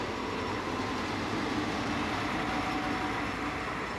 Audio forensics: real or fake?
real